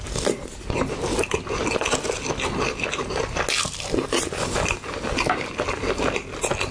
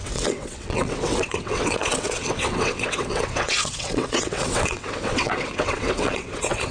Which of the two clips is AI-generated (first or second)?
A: second